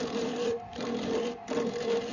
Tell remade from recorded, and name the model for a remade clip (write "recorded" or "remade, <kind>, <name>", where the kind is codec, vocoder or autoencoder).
remade, vocoder, BigVGAN v2